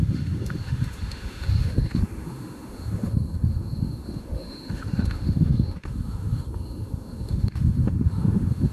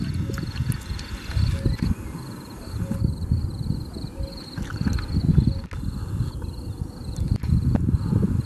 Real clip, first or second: second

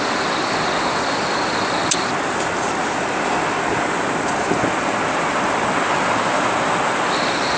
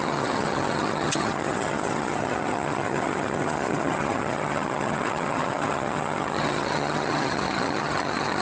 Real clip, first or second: first